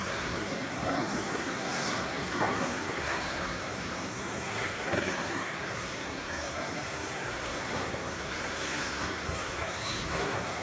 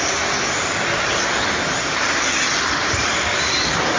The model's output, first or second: first